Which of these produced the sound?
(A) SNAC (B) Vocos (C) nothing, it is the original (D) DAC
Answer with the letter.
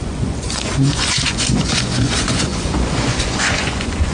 B